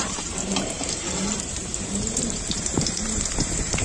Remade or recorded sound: remade